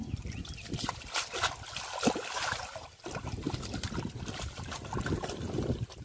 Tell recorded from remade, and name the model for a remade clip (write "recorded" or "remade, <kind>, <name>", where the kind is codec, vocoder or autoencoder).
remade, vocoder, BigVGAN v2